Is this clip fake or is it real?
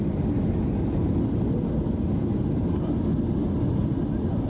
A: real